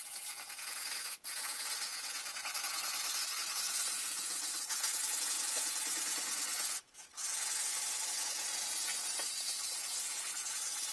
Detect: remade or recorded remade